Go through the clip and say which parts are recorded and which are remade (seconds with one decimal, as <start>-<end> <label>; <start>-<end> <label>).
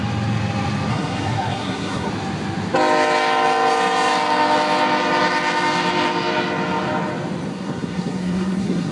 0.0-0.9 recorded; 0.9-2.1 remade; 2.1-7.5 recorded; 7.5-8.9 remade